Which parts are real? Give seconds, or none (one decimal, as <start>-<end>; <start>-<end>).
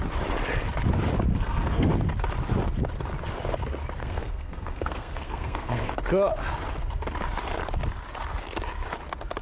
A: 0.0-1.3; 1.9-4.0; 5.9-9.4